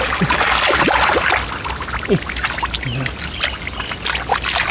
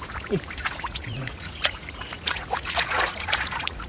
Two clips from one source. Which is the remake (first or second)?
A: second